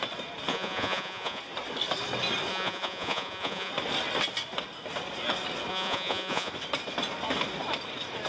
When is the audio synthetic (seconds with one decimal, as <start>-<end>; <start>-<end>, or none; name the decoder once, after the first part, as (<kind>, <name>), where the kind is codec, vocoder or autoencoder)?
0.5-1.4 (vocoder, Vocos); 2.5-3.7; 5.7-6.5

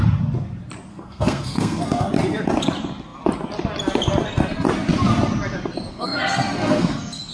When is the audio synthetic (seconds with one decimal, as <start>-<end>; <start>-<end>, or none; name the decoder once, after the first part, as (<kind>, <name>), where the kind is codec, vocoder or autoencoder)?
0.9-2.1 (codec, SNAC); 5.9-7.3

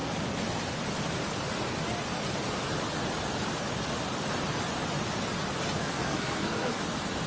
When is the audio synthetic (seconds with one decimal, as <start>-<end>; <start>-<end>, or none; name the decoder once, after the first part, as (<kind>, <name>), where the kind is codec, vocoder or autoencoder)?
5.8-6.8 (codec, SNAC)

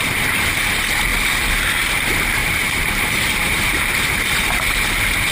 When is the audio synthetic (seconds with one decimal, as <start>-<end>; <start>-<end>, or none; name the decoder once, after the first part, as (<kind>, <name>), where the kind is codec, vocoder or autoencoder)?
2.4-3.8 (vocoder, BigVGAN v2)

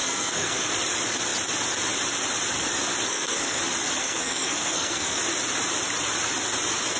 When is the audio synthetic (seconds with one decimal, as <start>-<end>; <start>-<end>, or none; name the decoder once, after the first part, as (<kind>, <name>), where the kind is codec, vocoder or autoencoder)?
0.0-0.7 (codec, SNAC); 3.1-3.6; 4.0-5.2

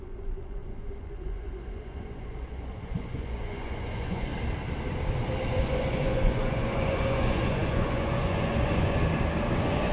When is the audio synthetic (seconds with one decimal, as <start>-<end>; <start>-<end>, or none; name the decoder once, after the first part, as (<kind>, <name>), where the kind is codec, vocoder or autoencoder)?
0.0-4.3 (vocoder, Vocos); 5.5-9.0; 9.5-9.9